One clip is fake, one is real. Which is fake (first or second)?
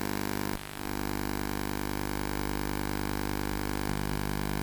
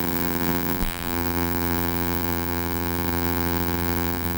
second